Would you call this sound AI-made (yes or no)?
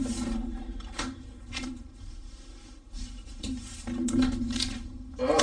yes